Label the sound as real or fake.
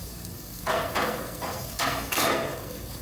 fake